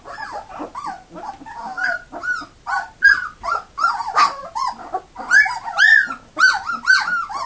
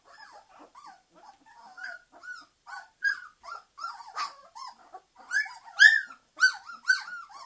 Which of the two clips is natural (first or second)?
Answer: first